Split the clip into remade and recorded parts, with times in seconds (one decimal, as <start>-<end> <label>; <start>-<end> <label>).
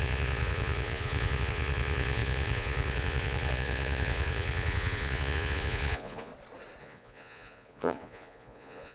0.0-6.3 remade; 6.3-6.8 recorded; 6.8-8.9 remade